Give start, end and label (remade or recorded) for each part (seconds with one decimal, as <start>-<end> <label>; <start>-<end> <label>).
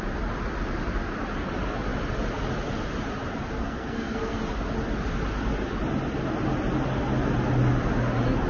0.0-3.6 recorded; 3.6-4.4 remade; 4.4-8.5 recorded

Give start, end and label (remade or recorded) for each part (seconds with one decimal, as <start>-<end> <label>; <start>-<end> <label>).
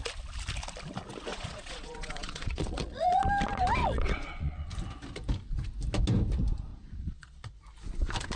0.0-1.3 recorded; 1.3-3.2 remade; 3.2-3.8 recorded; 3.8-4.7 remade; 4.7-6.7 recorded; 6.7-7.5 remade; 7.5-8.4 recorded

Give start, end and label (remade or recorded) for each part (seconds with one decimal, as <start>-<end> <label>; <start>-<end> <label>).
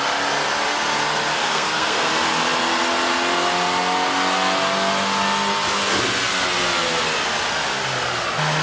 0.0-1.4 recorded; 1.4-2.1 remade; 2.1-8.6 recorded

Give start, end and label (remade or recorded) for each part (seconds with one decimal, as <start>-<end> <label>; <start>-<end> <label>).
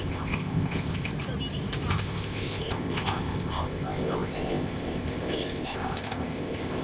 0.0-1.1 remade; 1.1-1.9 recorded; 1.9-6.8 remade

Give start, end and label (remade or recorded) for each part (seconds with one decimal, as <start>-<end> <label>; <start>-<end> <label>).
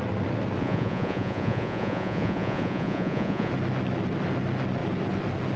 0.0-0.6 recorded; 0.6-3.5 remade; 3.5-5.6 recorded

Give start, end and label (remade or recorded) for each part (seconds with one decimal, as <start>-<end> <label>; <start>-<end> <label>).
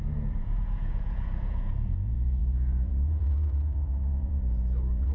0.0-5.1 remade